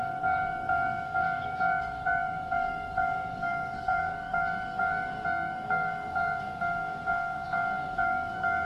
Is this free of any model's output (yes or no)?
no